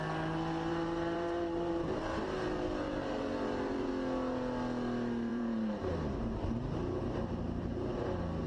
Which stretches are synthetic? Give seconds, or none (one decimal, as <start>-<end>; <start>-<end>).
0.7-3.9; 5.3-6.8